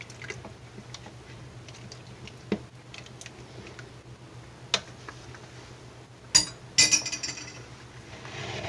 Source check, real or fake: real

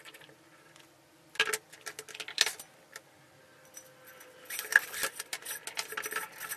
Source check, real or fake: real